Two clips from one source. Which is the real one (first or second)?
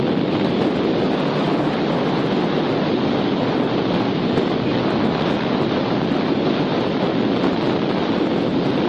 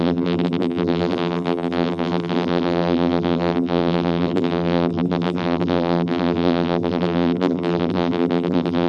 first